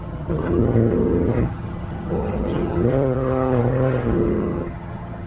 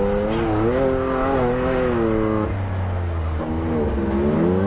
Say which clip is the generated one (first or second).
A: first